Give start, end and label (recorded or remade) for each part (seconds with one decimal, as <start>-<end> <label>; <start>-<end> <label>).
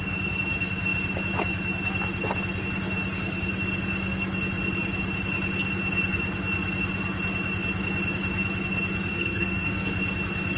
0.0-9.1 recorded; 9.1-9.9 remade; 9.9-10.6 recorded